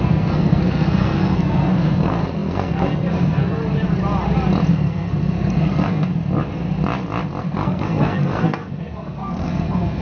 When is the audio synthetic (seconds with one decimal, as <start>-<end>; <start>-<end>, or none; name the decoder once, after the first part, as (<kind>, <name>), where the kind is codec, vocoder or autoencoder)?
0.0-3.6 (codec, SNAC); 4.7-6.1; 7.4-10.0